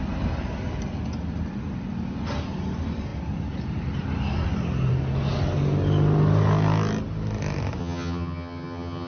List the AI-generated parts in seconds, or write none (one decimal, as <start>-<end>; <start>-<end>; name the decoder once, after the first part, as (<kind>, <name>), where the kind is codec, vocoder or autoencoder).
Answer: 7.8-9.1 (vocoder, HiFi-GAN)